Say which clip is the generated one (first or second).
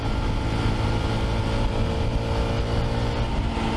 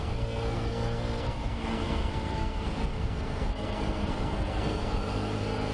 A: second